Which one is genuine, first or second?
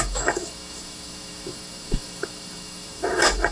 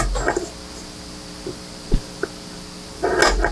second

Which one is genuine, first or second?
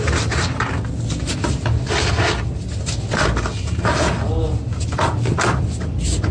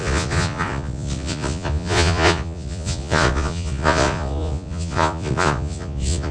first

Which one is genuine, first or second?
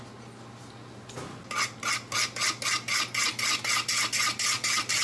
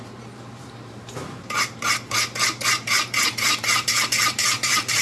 first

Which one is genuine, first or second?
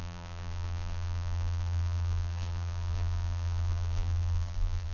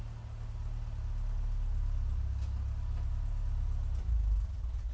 second